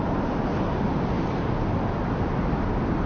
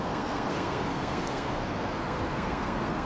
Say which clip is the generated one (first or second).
second